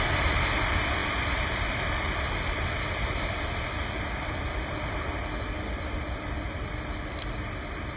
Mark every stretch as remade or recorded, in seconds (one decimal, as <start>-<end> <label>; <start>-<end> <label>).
0.0-1.0 recorded; 1.0-4.0 remade; 4.0-8.0 recorded

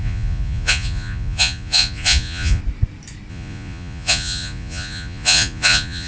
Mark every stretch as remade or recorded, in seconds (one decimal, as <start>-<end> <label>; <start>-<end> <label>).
0.0-2.6 remade; 2.6-3.3 recorded; 3.3-6.1 remade

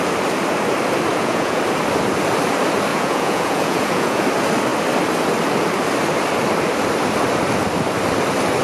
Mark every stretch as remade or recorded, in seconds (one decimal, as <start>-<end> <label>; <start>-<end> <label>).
0.0-1.1 recorded; 1.1-1.6 remade; 1.6-2.9 recorded; 2.9-4.2 remade; 4.2-8.6 recorded

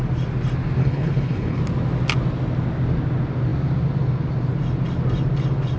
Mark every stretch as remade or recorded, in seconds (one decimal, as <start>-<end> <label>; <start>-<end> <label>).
0.0-0.8 recorded; 0.8-1.6 remade; 1.6-5.8 recorded